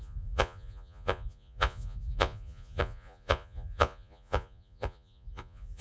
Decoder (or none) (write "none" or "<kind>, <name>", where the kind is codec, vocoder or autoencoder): vocoder, Vocos